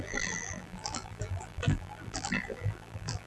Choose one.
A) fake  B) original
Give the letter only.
A